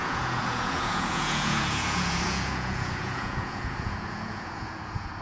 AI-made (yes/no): yes